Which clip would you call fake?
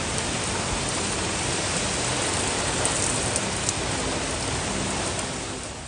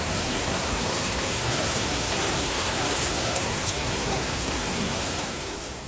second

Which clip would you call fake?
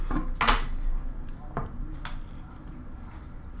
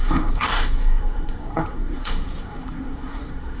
second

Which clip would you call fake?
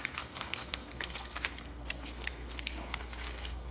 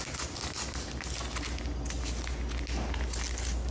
first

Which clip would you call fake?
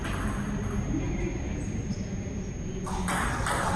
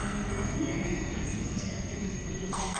second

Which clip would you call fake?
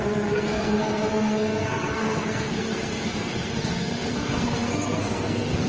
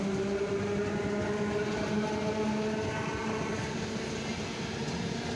first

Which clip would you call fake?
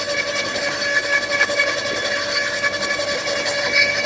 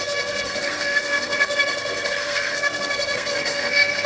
second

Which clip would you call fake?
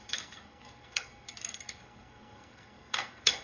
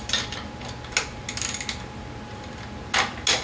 first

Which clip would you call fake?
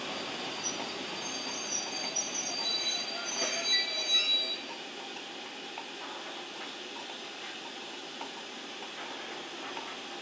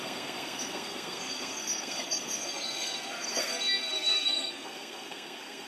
second